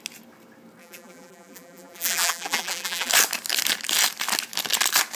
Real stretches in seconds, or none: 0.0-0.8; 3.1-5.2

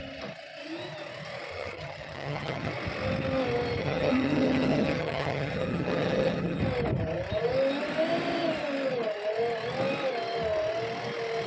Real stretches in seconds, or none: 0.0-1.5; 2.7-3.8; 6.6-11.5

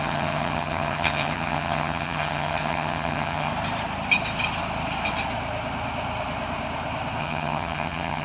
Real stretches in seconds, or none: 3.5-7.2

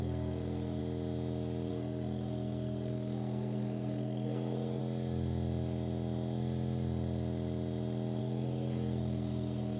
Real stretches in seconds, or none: 0.8-1.7; 4.8-8.2